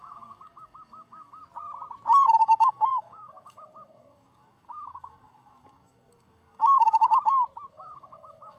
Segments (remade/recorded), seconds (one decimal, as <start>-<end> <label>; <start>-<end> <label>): 0.0-1.4 remade; 1.4-2.4 recorded; 2.4-7.0 remade; 7.0-7.7 recorded; 7.7-8.6 remade